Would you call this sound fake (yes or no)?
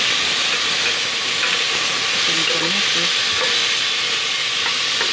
no